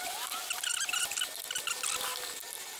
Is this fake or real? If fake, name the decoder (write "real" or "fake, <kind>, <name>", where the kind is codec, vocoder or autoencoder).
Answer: real